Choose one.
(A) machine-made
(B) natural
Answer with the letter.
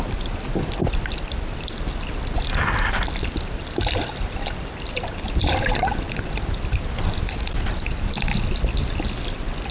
B